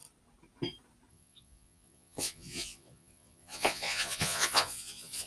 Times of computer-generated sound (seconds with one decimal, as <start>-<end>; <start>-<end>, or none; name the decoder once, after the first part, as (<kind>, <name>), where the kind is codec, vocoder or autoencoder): 1.1-5.3 (vocoder, Vocos)